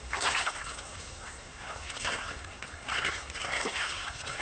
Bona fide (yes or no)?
no